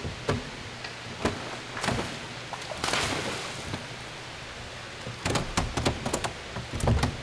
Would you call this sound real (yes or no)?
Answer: yes